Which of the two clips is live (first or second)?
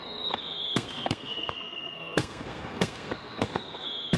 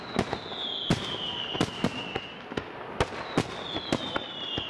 second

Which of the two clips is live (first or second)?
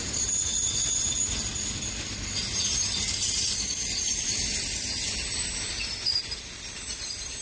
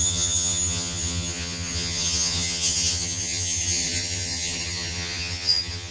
first